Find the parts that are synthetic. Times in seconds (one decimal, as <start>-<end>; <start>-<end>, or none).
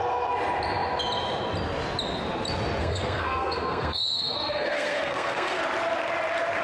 2.8-5.6